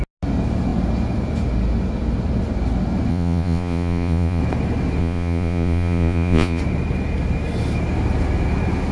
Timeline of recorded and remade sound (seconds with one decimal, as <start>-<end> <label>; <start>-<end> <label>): 0.0-3.1 recorded; 3.1-4.4 remade; 4.4-5.0 recorded; 5.0-6.6 remade; 6.6-8.9 recorded